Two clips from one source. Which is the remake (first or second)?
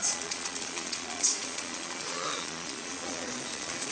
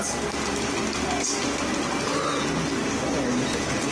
first